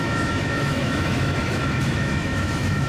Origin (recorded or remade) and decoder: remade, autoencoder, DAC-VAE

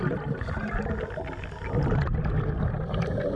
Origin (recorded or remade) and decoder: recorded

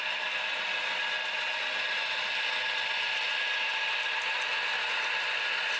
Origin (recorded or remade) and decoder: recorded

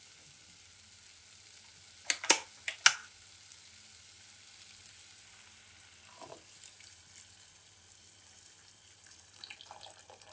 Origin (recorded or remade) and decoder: recorded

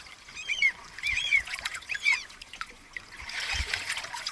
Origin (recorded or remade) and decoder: remade, vocoder, Vocos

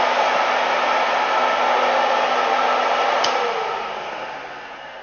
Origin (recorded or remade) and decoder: recorded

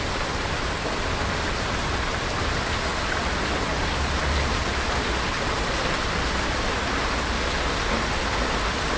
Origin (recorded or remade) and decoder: recorded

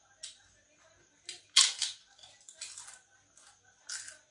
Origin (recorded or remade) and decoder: recorded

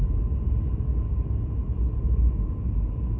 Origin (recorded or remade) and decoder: recorded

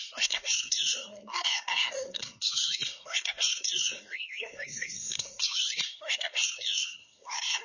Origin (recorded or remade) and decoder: remade, codec, SNAC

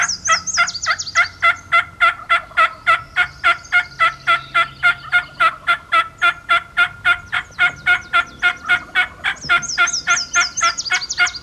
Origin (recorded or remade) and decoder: recorded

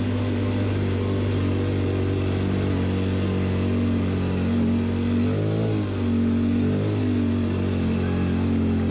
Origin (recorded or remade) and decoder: recorded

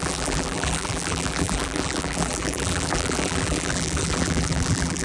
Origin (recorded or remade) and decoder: remade, vocoder, BigVGAN v2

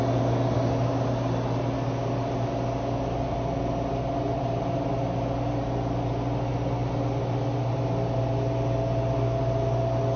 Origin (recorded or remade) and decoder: recorded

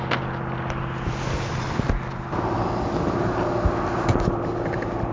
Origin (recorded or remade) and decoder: recorded